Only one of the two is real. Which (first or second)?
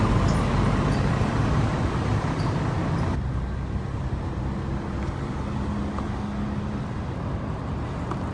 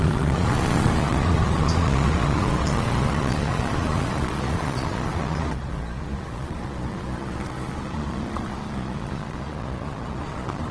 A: first